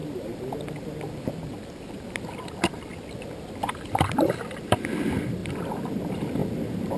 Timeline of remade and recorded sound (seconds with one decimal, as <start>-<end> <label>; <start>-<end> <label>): 0.0-5.4 remade; 5.4-6.0 recorded; 6.0-7.0 remade